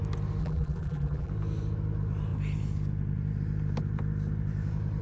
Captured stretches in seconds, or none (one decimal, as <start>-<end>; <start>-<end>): 0.0-0.4; 1.3-5.0